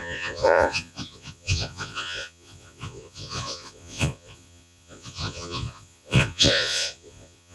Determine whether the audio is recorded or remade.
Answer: remade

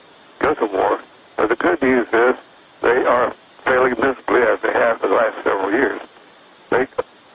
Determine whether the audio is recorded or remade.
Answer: recorded